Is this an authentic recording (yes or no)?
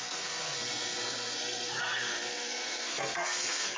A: no